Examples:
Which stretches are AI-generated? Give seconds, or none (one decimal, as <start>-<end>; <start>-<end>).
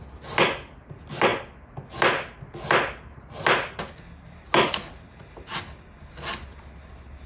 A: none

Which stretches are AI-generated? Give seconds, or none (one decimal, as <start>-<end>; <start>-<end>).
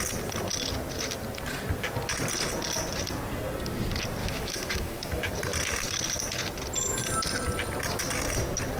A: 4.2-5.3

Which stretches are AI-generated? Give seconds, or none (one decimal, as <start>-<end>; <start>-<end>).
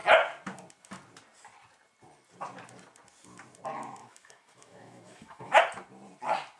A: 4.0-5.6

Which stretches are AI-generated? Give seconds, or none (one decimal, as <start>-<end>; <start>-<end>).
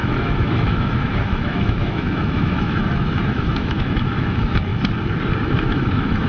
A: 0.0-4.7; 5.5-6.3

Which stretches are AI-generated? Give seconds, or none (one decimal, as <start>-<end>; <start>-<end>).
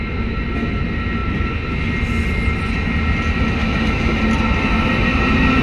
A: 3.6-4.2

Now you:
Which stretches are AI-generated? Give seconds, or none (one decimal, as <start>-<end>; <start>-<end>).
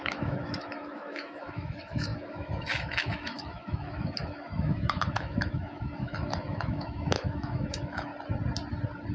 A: 0.0-8.1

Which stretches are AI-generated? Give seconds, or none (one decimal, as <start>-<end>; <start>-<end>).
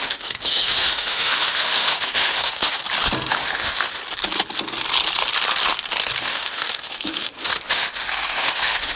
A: 0.0-2.8; 3.3-4.0; 6.2-9.0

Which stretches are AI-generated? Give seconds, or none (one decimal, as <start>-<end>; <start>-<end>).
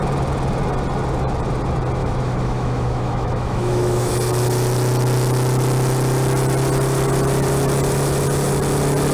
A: 2.0-4.1